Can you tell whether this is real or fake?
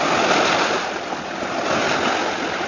real